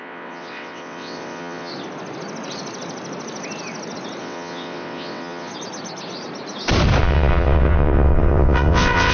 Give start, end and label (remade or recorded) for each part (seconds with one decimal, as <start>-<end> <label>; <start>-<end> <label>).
0.0-1.7 remade; 1.7-4.2 recorded; 4.2-5.5 remade; 5.5-7.0 recorded; 7.0-9.1 remade